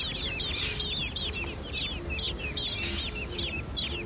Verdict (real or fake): real